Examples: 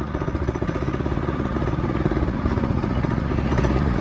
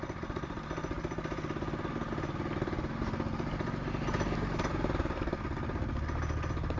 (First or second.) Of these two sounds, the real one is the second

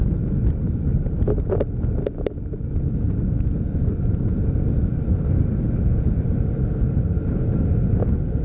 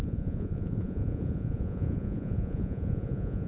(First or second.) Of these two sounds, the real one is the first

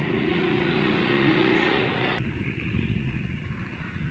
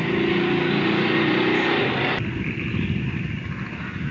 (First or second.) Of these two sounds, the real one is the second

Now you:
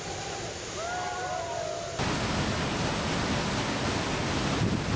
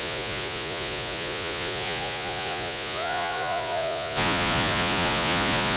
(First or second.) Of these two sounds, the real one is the first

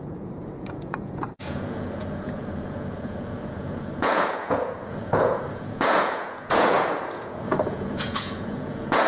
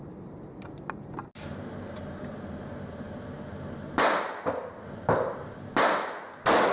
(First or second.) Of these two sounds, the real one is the second